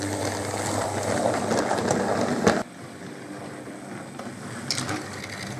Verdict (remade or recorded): recorded